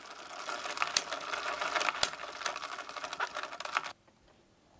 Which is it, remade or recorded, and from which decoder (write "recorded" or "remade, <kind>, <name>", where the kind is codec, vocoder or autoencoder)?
recorded